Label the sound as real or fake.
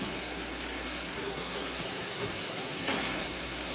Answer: fake